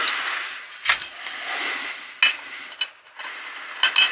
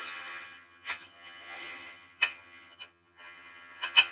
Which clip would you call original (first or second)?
first